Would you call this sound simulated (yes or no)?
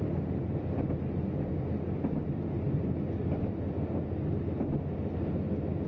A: no